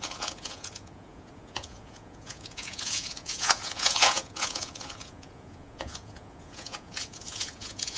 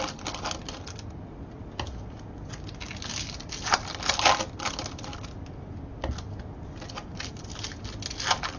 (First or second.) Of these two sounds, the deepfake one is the first